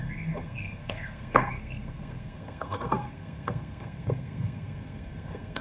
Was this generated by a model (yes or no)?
yes